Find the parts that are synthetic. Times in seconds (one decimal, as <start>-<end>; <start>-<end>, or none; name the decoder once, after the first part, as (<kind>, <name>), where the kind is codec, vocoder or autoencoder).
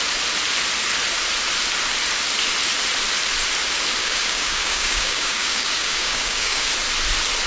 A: 4.0-6.7 (codec, DAC)